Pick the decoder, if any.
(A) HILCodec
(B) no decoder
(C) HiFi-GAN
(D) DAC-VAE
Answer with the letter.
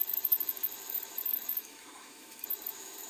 D